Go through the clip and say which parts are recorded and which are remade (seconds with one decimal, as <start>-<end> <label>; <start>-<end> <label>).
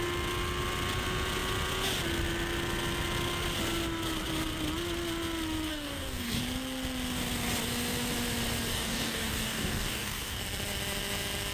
0.0-5.7 recorded; 5.7-6.4 remade; 6.4-8.7 recorded; 8.7-10.4 remade; 10.4-11.5 recorded